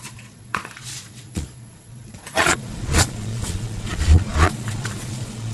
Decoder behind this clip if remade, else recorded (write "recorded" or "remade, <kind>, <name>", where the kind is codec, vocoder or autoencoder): remade, vocoder, Vocos